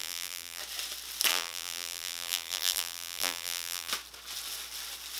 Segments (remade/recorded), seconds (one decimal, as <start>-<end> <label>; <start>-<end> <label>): 0.0-0.6 remade; 0.6-1.3 recorded; 1.3-3.9 remade; 3.9-5.2 recorded

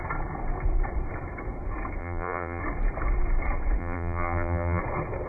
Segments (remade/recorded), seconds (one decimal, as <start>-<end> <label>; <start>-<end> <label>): 0.0-2.0 recorded; 2.0-2.6 remade; 2.6-3.8 recorded; 3.8-4.8 remade; 4.8-5.3 recorded

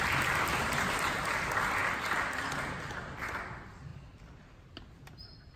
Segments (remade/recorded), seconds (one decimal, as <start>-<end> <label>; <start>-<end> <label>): 0.0-5.6 recorded